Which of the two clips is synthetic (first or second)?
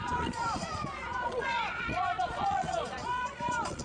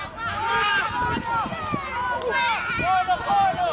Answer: first